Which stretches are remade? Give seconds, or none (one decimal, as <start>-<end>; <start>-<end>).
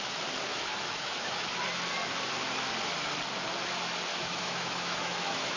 0.5-1.6; 4.1-5.6